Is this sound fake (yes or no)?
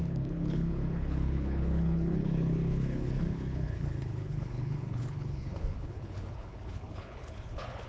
yes